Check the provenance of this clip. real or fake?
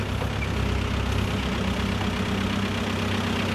real